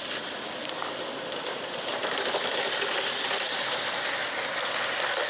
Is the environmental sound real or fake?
real